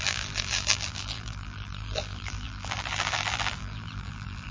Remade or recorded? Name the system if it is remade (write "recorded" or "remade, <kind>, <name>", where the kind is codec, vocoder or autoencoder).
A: remade, vocoder, BigVGAN v2